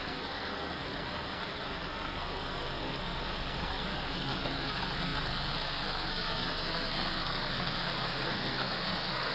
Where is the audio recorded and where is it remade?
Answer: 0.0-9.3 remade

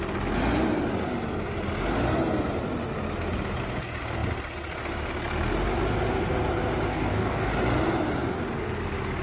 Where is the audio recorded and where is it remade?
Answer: 0.0-6.9 recorded; 6.9-7.5 remade; 7.5-9.2 recorded